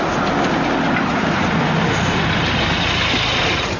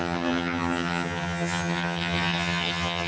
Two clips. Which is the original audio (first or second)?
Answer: first